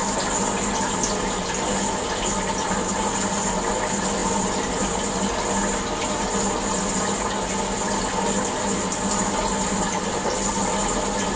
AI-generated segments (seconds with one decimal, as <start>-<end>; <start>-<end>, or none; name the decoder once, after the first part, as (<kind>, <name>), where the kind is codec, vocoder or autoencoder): none